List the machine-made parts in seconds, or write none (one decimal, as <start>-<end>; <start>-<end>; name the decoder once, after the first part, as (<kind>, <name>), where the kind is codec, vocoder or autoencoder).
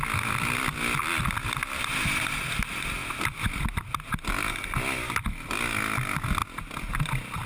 none